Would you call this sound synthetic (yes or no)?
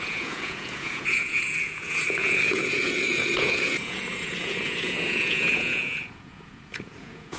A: yes